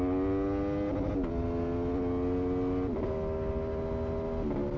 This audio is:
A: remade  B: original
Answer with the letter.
B